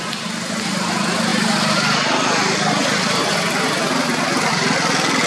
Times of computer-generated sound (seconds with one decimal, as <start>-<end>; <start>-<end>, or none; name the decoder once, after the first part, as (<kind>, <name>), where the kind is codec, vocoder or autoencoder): none